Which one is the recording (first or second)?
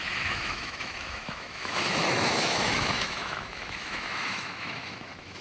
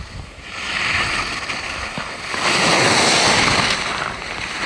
second